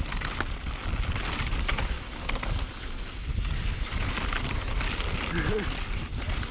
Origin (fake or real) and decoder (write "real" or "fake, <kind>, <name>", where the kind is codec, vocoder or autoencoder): real